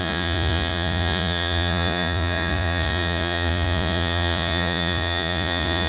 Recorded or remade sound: remade